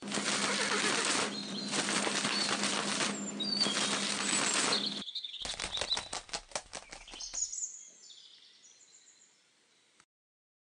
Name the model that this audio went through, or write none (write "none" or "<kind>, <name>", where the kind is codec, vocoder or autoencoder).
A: none